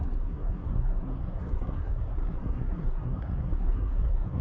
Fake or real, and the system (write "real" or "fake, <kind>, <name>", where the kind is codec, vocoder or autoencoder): fake, codec, SNAC